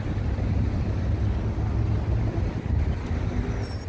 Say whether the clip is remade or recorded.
recorded